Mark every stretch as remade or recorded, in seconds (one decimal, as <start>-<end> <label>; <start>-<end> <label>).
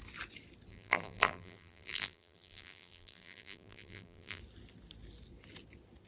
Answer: 0.0-0.7 recorded; 0.7-4.4 remade; 4.4-6.1 recorded